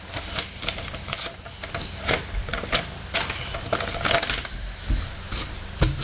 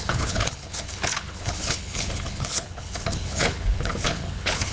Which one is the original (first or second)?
first